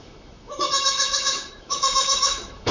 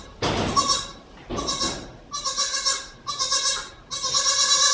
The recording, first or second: second